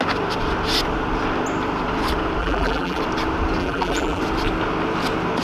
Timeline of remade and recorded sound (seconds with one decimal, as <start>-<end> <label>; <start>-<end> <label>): 0.0-2.4 recorded; 2.4-3.0 remade; 3.0-3.6 recorded; 3.6-4.2 remade; 4.2-5.4 recorded